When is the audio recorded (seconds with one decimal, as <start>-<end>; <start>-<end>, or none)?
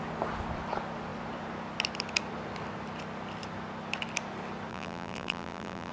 0.0-4.7